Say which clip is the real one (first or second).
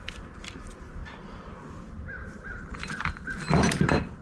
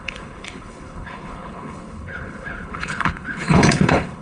first